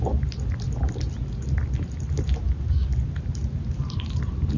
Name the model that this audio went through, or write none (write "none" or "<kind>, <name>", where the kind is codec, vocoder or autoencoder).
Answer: none